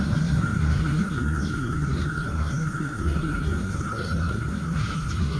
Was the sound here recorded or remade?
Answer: remade